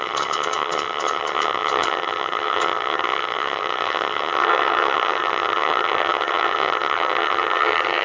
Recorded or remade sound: remade